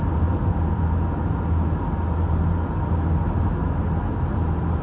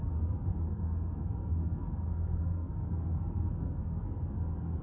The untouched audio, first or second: first